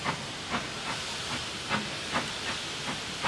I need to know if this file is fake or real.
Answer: real